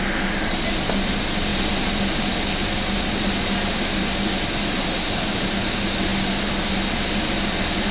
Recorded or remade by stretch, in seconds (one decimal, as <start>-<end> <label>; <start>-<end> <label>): 0.0-7.9 recorded